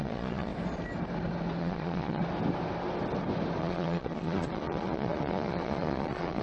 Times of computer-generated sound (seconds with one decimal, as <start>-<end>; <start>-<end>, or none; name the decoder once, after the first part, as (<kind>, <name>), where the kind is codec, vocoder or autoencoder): 0.0-0.5 (vocoder, Vocos); 1.6-2.2; 3.6-6.4